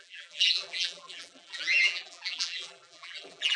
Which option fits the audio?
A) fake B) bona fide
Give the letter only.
A